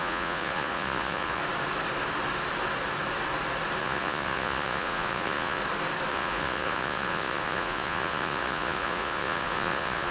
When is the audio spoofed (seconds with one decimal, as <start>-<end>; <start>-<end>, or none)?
0.0-1.4; 3.8-5.6; 6.1-10.1